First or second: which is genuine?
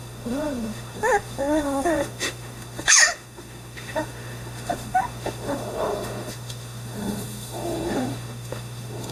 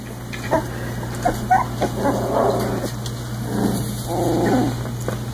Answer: second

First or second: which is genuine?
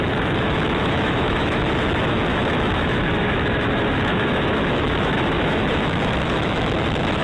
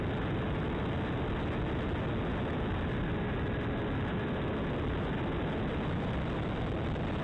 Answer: second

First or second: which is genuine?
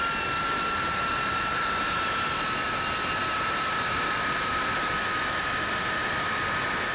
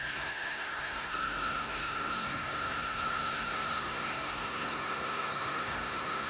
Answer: first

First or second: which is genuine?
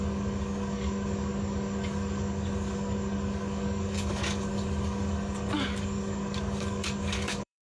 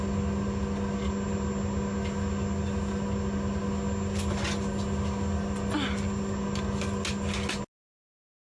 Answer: second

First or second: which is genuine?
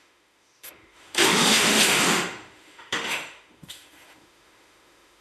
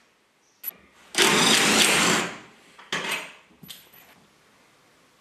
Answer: second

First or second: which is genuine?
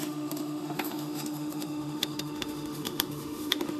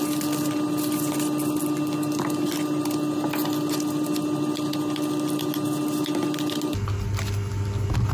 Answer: second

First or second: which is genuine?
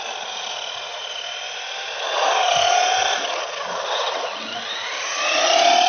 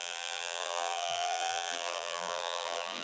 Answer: first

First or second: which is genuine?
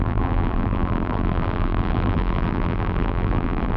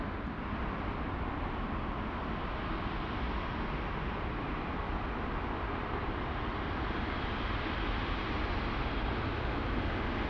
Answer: second